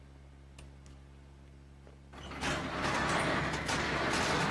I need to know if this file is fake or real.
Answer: real